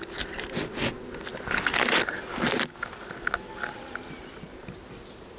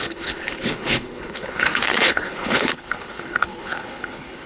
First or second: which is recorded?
first